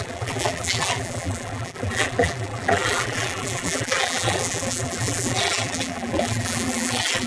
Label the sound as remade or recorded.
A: remade